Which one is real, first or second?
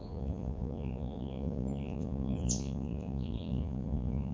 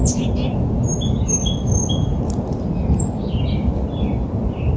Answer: second